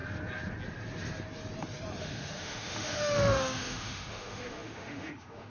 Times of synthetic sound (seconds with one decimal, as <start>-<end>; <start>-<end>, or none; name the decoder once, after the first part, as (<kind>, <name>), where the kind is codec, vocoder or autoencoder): 2.0-5.5 (autoencoder, DAC-VAE)